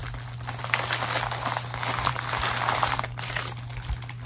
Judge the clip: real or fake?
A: real